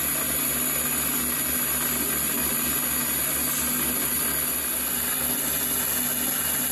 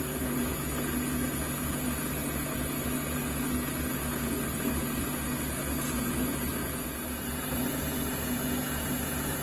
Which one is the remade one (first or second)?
second